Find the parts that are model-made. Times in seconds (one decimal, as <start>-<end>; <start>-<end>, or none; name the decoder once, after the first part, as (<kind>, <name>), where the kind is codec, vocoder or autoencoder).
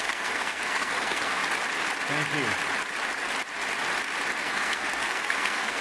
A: 0.0-1.4 (codec, SNAC); 4.4-5.8